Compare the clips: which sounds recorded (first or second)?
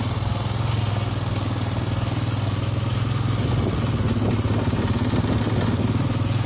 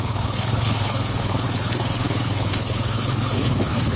first